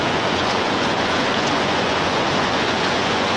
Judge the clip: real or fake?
fake